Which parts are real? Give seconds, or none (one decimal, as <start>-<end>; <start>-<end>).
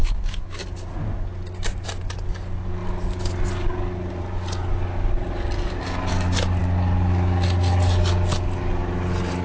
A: 0.6-9.4